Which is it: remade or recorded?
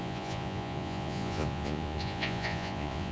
remade